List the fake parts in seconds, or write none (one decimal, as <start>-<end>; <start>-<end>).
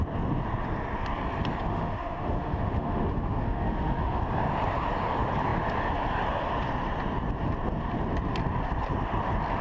1.7-4.2